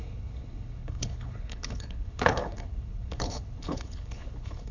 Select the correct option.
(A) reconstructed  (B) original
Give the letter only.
A